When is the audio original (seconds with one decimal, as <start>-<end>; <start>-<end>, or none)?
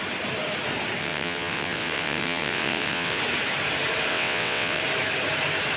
0.0-1.0; 3.2-4.1; 4.8-5.8